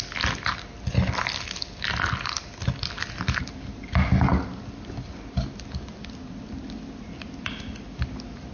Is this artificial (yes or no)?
no